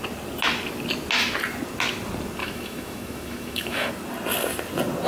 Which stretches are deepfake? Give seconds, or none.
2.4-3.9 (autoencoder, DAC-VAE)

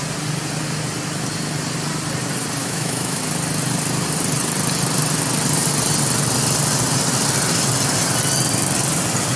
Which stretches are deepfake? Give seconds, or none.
2.6-3.2 (autoencoder, DAC-VAE)

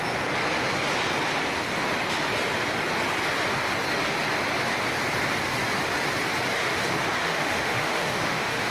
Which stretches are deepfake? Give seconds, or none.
7.2-8.7 (autoencoder, DAC-VAE)

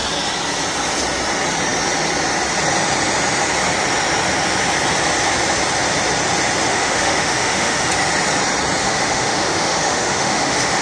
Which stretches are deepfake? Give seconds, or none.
6.7-7.9 (autoencoder, DAC-VAE); 8.8-10.8

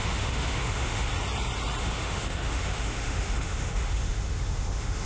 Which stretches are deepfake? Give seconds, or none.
0.0-1.1 (autoencoder, DAC-VAE); 1.8-5.1

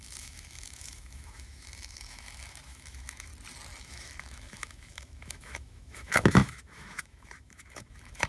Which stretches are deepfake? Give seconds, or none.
0.0-3.3 (autoencoder, DAC-VAE); 3.8-8.3

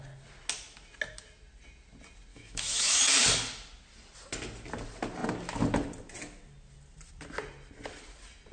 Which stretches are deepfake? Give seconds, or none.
2.3-3.0 (autoencoder, DAC-VAE)